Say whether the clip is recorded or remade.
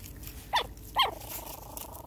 recorded